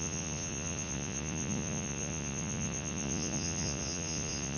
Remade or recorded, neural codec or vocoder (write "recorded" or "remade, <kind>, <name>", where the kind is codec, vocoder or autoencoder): remade, vocoder, Vocos